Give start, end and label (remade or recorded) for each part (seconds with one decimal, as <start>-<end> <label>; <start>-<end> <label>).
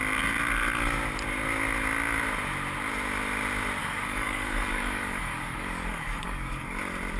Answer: 0.0-3.8 recorded; 3.8-6.8 remade; 6.8-7.2 recorded